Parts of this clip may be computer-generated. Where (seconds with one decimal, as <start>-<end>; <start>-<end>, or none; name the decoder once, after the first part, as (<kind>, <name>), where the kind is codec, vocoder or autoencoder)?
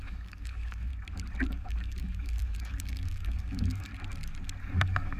0.0-0.9 (codec, DAC); 1.5-3.9; 4.6-5.2